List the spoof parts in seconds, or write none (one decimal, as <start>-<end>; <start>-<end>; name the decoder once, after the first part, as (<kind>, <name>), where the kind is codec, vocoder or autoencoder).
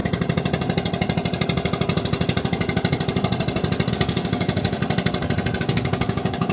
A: 3.9-4.8 (codec, DAC); 5.6-6.5